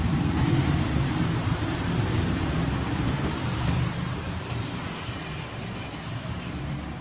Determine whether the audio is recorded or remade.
remade